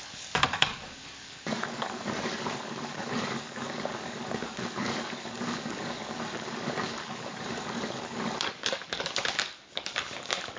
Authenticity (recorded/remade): remade